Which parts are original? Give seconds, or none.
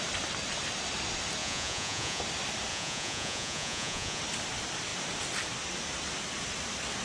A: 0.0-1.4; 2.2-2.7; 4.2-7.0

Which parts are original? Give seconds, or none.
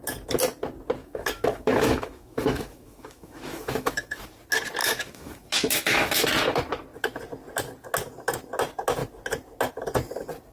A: 0.0-1.0; 4.2-4.8; 6.3-10.5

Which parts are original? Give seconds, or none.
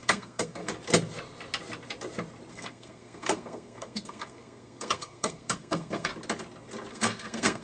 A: 0.7-2.5; 6.1-6.9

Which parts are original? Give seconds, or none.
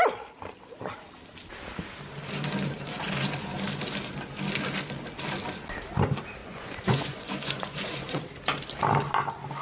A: 0.0-6.4; 8.2-9.6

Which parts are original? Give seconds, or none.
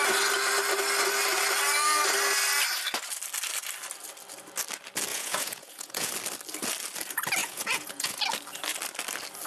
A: 0.0-5.1; 6.1-7.4; 8.2-9.5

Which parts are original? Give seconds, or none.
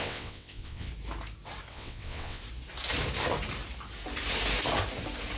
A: 0.9-1.7; 2.4-5.4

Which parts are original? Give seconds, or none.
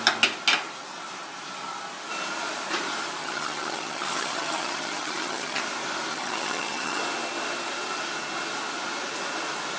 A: 0.0-3.2; 5.6-6.1; 7.0-9.8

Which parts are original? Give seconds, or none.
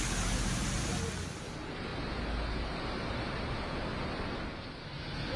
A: 0.0-5.4